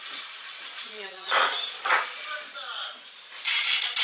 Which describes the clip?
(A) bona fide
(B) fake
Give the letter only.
B